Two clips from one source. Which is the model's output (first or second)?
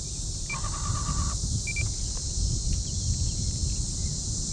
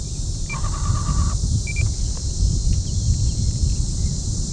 second